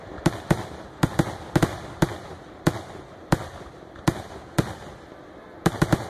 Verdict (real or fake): real